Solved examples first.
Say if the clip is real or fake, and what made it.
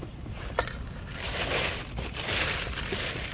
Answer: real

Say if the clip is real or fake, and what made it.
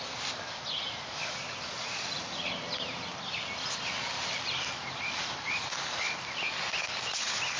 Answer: real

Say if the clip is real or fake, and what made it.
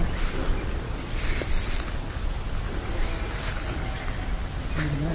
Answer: real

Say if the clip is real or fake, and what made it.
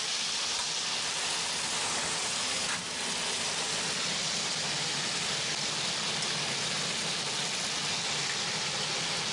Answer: real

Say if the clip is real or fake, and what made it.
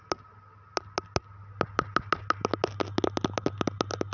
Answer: real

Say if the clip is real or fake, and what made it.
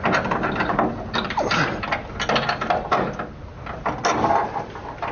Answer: real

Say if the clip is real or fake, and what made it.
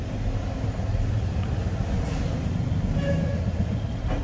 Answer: real